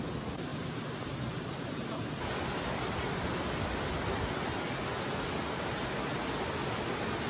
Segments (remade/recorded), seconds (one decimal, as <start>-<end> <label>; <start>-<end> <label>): 0.0-0.5 recorded; 0.5-1.8 remade; 1.8-7.3 recorded